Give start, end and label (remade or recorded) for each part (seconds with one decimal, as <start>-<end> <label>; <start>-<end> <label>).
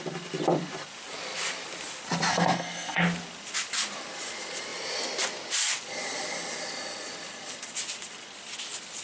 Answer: 0.0-2.3 recorded; 2.3-3.0 remade; 3.0-9.0 recorded